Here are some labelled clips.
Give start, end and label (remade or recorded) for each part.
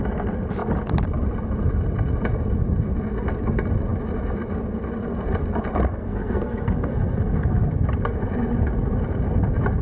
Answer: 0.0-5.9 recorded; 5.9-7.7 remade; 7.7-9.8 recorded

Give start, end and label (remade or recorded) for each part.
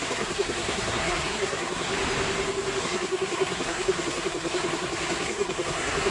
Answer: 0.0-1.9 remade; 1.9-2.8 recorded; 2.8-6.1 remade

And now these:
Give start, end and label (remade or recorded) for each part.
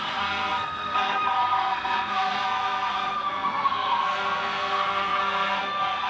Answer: 0.0-6.1 remade